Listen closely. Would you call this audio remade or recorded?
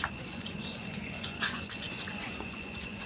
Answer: remade